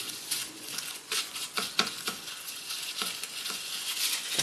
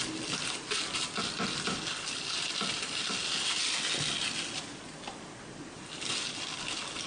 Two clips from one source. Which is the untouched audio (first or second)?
second